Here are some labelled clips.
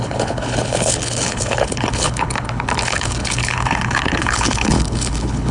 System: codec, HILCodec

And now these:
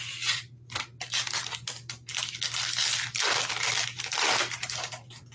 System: none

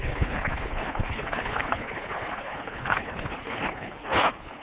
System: codec, HILCodec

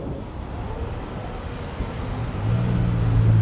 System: none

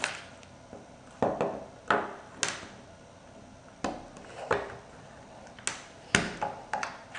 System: none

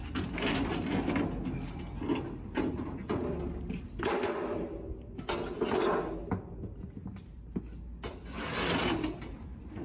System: none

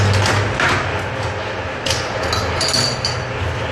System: none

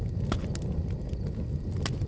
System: none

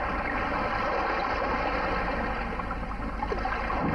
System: none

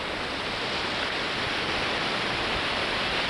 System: none